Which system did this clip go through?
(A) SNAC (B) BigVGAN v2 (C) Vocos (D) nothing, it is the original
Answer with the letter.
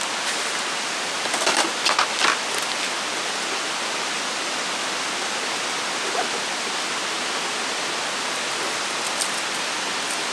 D